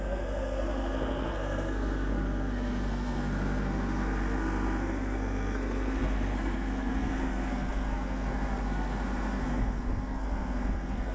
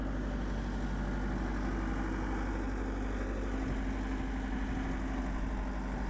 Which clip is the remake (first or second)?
first